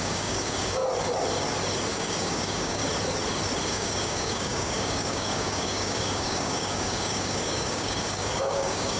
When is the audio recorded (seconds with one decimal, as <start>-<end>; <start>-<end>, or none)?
0.8-1.9; 2.8-3.7